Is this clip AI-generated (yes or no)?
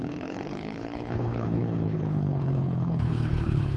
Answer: yes